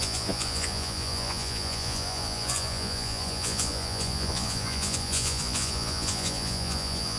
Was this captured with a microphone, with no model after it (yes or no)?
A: no